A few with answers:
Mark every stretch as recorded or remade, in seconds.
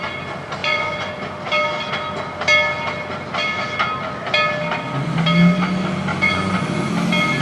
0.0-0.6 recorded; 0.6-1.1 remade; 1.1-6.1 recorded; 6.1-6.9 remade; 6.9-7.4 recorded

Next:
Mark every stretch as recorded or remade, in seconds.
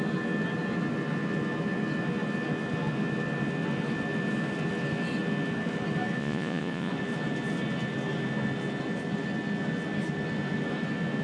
0.0-6.2 recorded; 6.2-6.9 remade; 6.9-11.2 recorded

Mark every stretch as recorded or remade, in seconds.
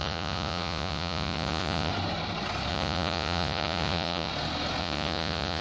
0.0-1.9 remade; 1.9-2.7 recorded; 2.7-4.3 remade; 4.3-4.8 recorded; 4.8-5.6 remade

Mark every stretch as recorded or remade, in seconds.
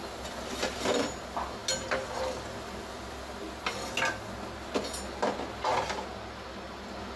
0.0-7.2 recorded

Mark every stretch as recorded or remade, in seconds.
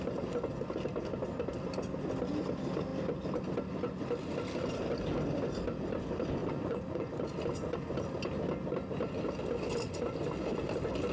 0.0-6.4 recorded; 6.4-7.1 remade; 7.1-11.1 recorded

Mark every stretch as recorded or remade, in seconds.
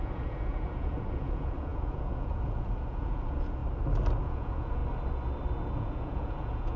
0.0-3.6 remade; 3.6-4.2 recorded; 4.2-4.8 remade; 4.8-5.8 recorded; 5.8-6.8 remade